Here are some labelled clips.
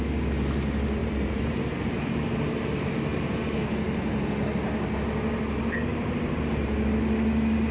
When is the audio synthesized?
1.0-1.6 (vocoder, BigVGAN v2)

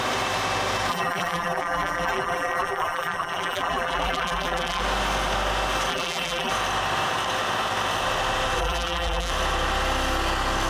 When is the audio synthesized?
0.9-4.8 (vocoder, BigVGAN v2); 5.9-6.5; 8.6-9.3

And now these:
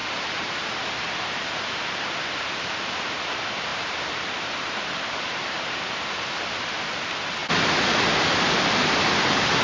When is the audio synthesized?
0.0-1.6 (vocoder, BigVGAN v2); 3.7-6.0

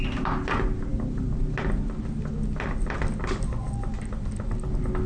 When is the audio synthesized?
none